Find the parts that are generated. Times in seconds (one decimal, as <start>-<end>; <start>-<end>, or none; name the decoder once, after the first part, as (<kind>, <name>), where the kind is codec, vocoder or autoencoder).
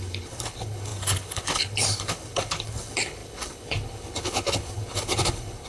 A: 0.0-5.7 (codec, HILCodec)